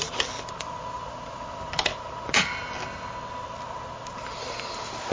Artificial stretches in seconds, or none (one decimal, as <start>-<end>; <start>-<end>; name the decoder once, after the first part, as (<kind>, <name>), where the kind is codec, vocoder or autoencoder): none